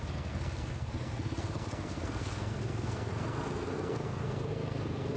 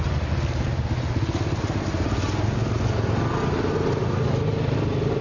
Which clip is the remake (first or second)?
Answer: first